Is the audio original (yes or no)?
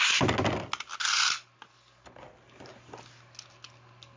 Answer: yes